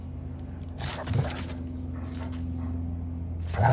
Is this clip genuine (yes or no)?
yes